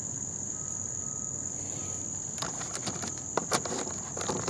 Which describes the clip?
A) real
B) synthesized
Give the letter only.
A